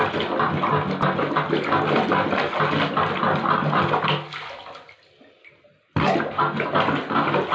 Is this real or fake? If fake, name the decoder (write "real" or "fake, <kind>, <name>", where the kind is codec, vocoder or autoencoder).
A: real